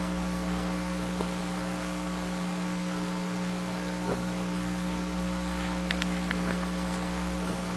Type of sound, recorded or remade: remade